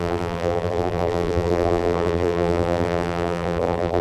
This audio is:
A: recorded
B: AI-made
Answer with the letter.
B